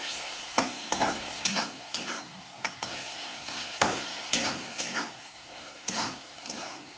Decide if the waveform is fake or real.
fake